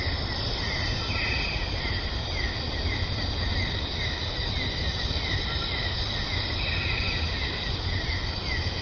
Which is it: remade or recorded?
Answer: recorded